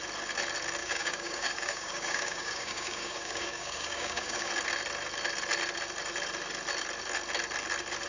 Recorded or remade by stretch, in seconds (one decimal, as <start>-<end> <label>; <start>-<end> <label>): 0.0-0.8 recorded; 0.8-4.5 remade; 4.5-8.1 recorded